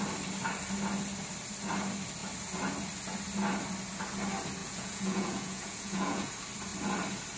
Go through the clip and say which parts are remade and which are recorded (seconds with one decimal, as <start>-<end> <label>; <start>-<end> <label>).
0.0-4.6 recorded; 4.6-6.3 remade; 6.3-7.4 recorded